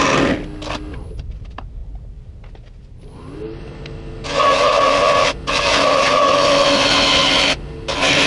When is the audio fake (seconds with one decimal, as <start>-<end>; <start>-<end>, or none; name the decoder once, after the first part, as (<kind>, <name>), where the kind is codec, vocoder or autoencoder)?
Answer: none